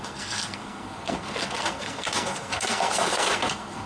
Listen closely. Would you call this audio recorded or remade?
remade